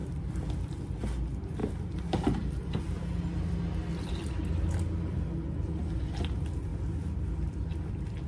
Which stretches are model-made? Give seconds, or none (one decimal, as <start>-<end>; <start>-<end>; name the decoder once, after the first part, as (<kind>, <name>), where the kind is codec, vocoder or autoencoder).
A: 0.0-0.5 (vocoder, BigVGAN v2); 1.6-2.8